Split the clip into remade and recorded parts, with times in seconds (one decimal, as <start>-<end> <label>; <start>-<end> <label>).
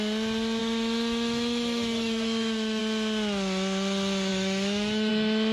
0.0-0.6 recorded; 0.6-2.8 remade; 2.8-4.3 recorded; 4.3-5.1 remade; 5.1-5.5 recorded